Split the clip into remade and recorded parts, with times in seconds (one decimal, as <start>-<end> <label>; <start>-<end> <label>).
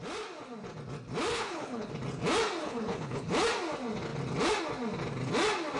0.0-1.3 recorded; 1.3-1.9 remade; 1.9-2.6 recorded; 2.6-3.3 remade; 3.3-5.8 recorded